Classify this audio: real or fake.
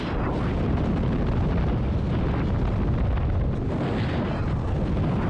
real